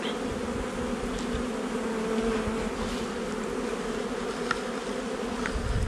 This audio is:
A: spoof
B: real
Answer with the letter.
B